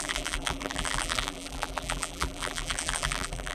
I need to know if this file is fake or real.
fake